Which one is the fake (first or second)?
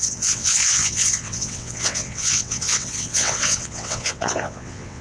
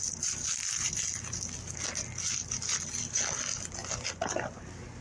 first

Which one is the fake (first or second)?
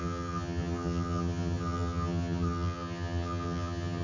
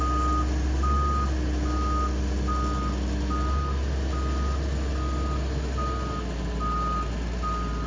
first